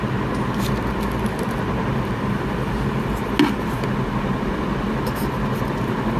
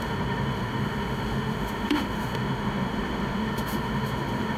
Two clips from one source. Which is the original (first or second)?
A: first